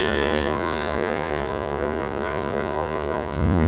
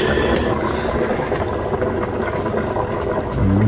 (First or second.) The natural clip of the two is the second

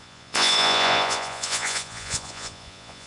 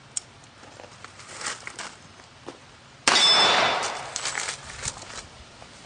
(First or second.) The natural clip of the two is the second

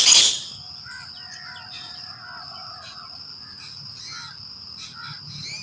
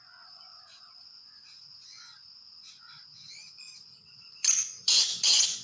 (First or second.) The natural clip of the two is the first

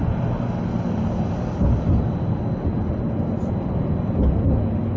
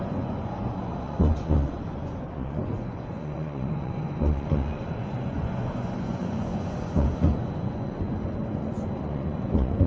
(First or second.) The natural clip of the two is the first